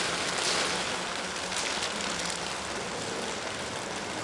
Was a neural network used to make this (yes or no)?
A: no